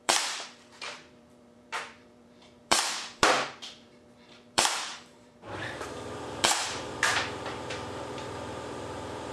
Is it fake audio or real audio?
fake